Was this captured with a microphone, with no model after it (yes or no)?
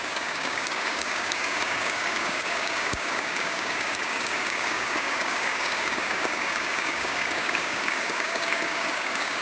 no